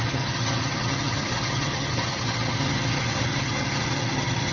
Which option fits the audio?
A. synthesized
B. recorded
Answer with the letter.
A